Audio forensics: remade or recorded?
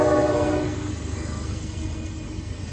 remade